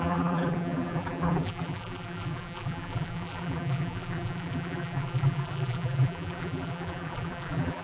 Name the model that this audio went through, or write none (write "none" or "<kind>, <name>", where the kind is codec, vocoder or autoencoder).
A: vocoder, BigVGAN v2